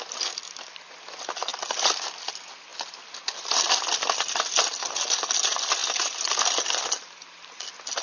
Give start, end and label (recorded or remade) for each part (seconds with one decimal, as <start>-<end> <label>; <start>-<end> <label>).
0.0-8.0 recorded